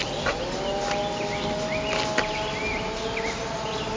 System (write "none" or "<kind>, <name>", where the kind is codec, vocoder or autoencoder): none